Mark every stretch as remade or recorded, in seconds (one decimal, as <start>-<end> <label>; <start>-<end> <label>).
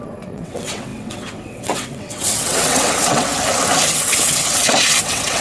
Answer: 0.0-3.3 remade; 3.3-3.9 recorded; 3.9-5.4 remade